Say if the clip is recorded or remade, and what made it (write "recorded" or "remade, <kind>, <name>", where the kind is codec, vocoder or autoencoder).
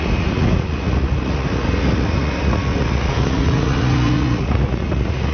remade, vocoder, Vocos